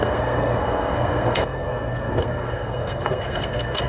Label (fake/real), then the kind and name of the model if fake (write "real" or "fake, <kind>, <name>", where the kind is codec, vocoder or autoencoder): fake, codec, SNAC